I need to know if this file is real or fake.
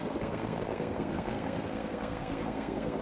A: fake